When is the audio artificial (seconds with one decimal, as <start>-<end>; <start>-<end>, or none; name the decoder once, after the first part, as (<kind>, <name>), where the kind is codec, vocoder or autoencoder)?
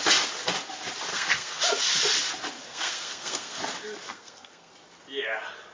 1.1-1.6 (codec, SNAC); 2.6-3.6; 4.1-4.7